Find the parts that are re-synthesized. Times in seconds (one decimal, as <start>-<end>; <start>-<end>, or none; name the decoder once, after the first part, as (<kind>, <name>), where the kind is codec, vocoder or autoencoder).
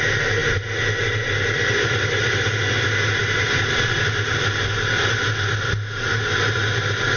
none